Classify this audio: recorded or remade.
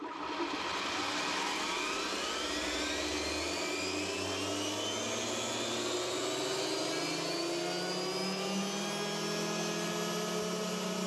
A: recorded